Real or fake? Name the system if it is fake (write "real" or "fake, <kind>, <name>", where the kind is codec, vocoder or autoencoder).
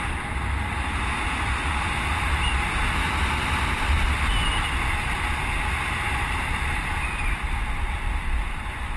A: real